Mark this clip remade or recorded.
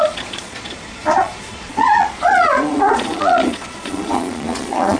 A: remade